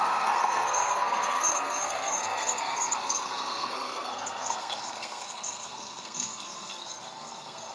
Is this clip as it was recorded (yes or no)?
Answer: no